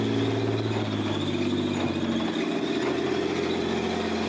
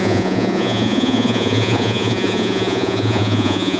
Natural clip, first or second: first